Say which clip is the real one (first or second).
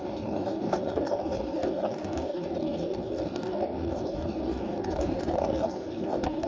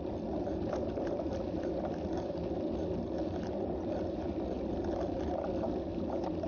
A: second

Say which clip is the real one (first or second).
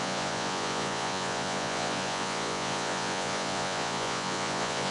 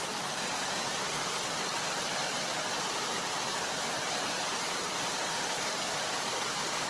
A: second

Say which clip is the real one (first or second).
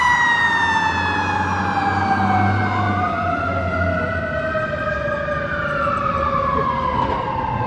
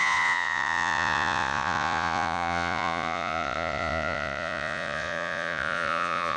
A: first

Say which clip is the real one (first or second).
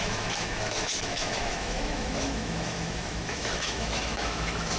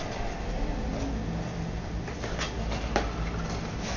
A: second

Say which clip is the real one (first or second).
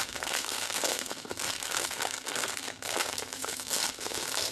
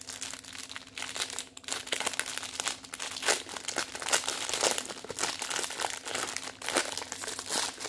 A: second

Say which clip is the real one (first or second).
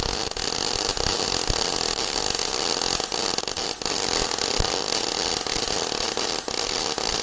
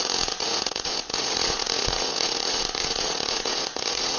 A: first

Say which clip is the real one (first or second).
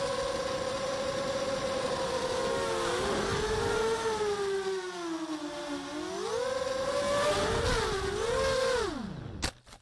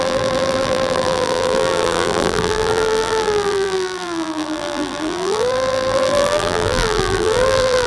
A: first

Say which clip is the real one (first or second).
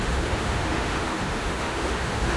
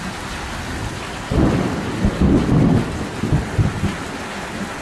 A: second